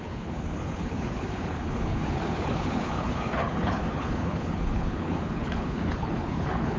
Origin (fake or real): fake